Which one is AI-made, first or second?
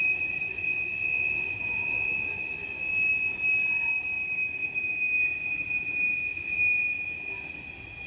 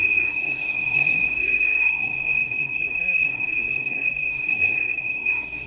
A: second